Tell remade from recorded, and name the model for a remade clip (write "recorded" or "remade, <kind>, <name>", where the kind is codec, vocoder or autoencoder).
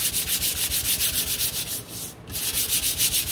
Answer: recorded